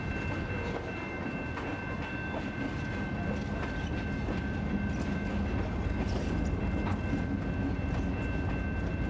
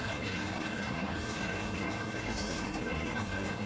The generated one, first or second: second